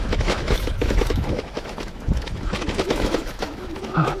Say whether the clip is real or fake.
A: fake